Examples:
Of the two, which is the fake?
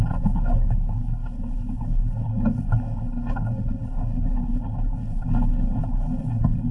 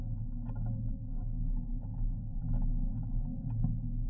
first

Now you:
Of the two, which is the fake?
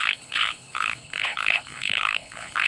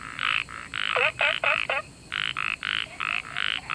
first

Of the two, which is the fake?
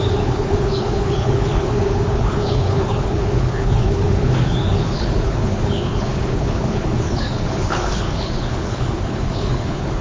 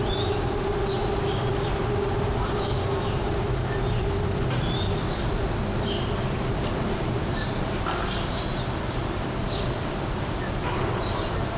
first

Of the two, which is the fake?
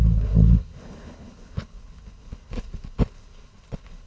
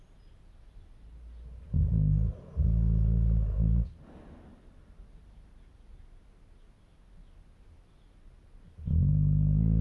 first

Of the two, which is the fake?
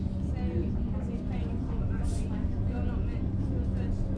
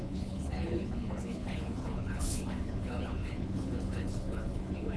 second